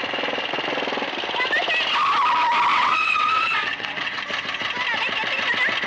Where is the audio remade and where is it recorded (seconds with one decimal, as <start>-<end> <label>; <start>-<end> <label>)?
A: 0.0-2.7 recorded; 2.7-4.2 remade; 4.2-5.9 recorded